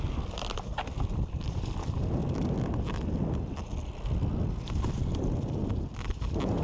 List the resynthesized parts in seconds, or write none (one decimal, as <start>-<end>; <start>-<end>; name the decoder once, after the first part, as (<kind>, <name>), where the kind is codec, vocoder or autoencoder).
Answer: 0.0-2.2 (vocoder, BigVGAN v2)